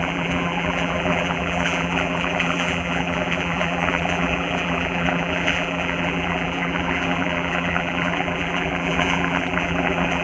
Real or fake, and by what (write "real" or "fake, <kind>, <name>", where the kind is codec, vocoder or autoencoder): fake, vocoder, BigVGAN v2